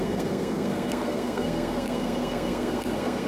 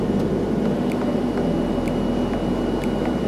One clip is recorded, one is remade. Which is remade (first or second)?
first